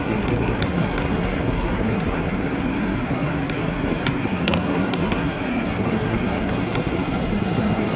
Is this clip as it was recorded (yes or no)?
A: no